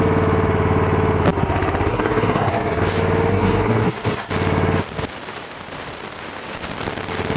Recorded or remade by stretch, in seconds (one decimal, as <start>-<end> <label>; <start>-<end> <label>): 0.0-1.9 recorded; 1.9-2.8 remade; 2.8-3.3 recorded; 3.3-4.3 remade; 4.3-7.4 recorded